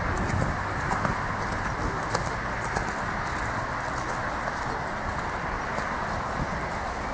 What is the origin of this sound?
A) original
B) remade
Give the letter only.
A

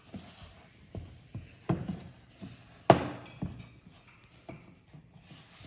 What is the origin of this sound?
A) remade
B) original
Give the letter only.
B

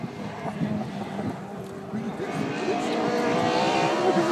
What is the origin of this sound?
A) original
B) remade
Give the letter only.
A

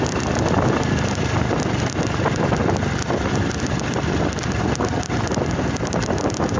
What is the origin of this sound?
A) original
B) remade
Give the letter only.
A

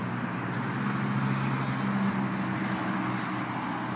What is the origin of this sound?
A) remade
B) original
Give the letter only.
B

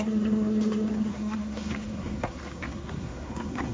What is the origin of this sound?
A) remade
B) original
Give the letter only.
A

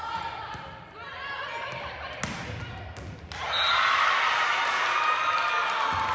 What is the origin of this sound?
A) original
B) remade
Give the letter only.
A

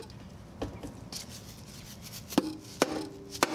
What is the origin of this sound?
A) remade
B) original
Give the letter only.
B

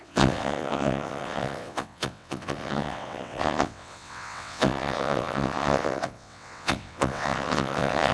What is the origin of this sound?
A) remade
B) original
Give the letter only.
A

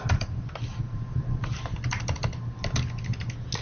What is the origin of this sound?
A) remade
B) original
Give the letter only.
B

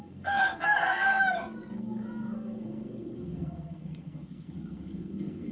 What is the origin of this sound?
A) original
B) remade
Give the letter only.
B